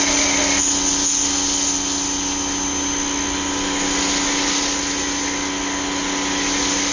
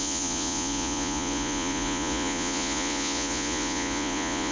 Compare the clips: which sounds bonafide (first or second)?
first